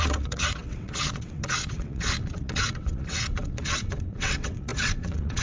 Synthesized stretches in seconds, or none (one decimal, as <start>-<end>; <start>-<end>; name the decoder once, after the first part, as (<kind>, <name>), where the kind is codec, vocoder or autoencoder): 0.0-5.4 (vocoder, WaveNeXt)